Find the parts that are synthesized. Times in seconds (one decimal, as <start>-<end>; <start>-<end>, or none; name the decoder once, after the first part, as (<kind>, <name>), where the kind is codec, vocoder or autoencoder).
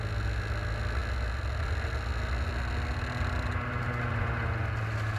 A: none